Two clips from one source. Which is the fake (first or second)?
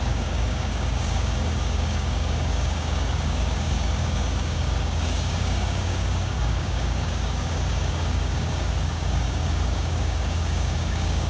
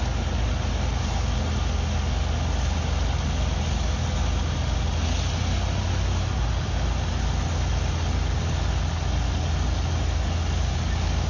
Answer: first